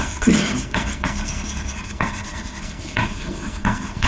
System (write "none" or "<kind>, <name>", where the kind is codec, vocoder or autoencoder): codec, SNAC